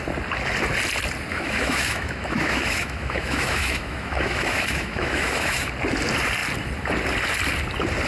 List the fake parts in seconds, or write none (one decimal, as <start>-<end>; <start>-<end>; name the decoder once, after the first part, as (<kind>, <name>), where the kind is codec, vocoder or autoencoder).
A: 1.3-5.7 (autoencoder, DAC-VAE)